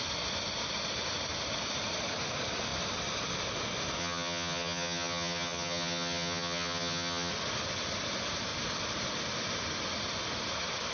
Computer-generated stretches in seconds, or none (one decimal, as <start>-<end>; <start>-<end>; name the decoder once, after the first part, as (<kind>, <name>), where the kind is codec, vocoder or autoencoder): 4.0-7.3 (vocoder, HiFi-GAN)

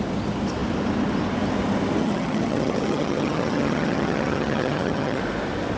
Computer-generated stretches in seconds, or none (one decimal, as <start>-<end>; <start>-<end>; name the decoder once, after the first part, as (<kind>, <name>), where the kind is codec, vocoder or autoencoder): 2.0-5.2 (vocoder, HiFi-GAN)

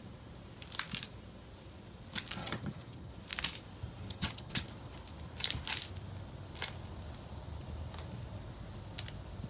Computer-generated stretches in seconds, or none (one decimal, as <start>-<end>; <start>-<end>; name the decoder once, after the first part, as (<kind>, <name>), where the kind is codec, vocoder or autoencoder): 2.4-3.1 (vocoder, HiFi-GAN); 4.0-4.7

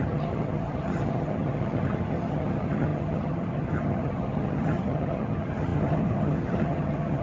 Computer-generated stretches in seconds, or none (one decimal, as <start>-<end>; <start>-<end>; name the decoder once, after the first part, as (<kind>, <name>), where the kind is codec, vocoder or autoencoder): 0.0-7.2 (vocoder, HiFi-GAN)

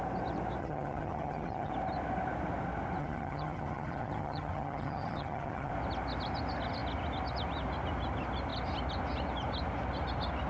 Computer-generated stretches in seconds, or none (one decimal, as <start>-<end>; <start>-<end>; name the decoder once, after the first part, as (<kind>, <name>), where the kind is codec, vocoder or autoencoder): 0.6-1.7 (vocoder, HiFi-GAN); 3.0-5.7

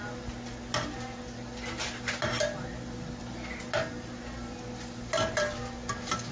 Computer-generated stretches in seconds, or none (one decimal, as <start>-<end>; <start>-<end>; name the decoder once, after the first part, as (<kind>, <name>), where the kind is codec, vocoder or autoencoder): none

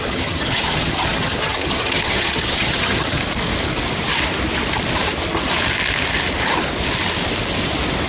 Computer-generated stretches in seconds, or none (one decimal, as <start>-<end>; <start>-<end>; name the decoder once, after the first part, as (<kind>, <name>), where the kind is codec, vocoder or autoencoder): 0.0-3.2 (vocoder, HiFi-GAN)

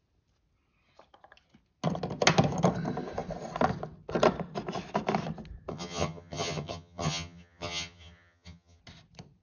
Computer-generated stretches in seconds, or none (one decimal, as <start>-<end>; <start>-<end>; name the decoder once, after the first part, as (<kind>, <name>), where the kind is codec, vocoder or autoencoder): 5.7-8.8 (vocoder, HiFi-GAN)